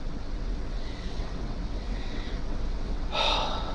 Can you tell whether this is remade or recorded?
remade